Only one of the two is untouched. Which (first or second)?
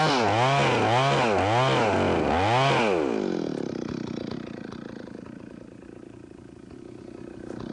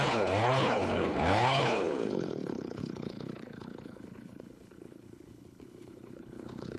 first